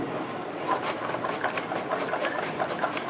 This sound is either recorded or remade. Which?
remade